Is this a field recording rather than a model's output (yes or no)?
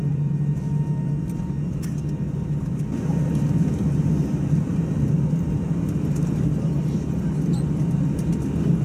yes